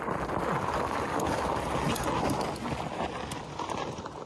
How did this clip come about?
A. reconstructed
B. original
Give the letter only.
B